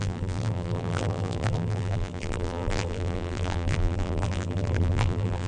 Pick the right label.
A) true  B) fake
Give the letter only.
B